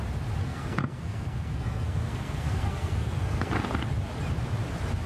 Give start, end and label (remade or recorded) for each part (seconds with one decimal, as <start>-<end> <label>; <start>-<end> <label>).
0.0-0.4 recorded; 0.4-3.5 remade; 3.5-5.1 recorded